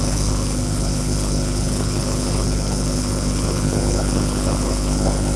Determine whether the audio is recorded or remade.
remade